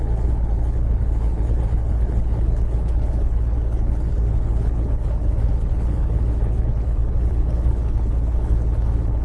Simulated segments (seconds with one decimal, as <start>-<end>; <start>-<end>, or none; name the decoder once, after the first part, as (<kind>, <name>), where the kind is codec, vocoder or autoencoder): 0.0-9.2 (codec, HILCodec)